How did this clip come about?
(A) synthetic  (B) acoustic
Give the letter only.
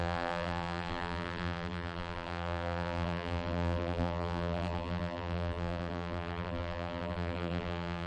A